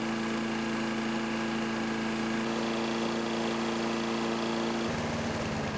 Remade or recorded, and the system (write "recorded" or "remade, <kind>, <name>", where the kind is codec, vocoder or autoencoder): recorded